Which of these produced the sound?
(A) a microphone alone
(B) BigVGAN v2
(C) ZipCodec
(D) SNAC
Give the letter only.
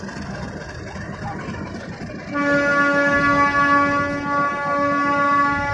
A